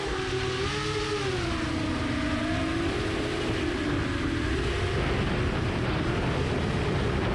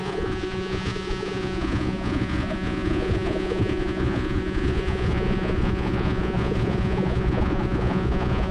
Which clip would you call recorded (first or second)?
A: first